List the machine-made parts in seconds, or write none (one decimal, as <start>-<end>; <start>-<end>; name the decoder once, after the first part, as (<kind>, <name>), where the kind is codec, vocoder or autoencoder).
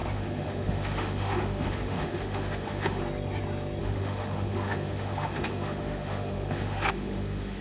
0.0-3.0 (autoencoder, DAC-VAE); 3.8-7.6